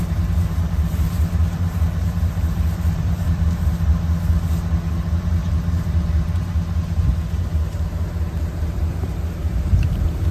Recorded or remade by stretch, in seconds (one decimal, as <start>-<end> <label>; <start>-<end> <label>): 0.0-3.9 remade; 3.9-5.2 recorded; 5.2-10.3 remade